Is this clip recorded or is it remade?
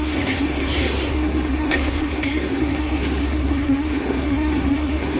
remade